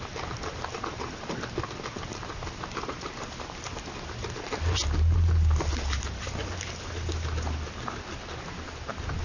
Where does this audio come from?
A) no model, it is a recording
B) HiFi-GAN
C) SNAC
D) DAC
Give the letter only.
A